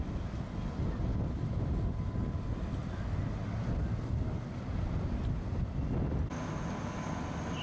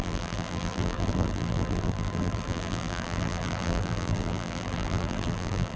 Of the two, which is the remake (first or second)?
second